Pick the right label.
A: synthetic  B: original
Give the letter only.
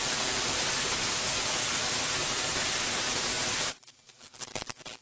B